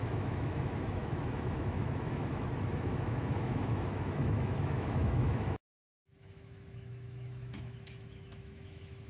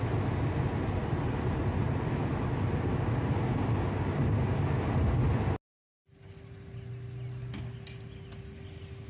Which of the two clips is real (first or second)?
second